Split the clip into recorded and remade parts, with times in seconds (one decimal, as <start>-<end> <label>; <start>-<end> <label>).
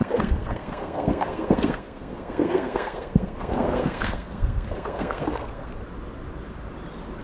0.0-5.7 remade; 5.7-7.2 recorded